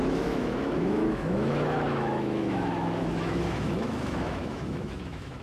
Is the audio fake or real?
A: fake